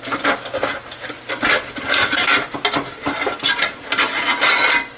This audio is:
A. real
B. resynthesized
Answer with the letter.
A